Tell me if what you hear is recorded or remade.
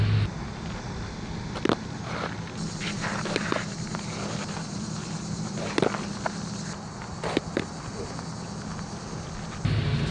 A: recorded